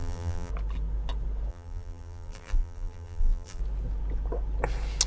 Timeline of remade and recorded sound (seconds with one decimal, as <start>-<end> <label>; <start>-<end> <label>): 0.0-0.5 remade; 0.5-1.5 recorded; 1.5-3.6 remade; 3.6-5.1 recorded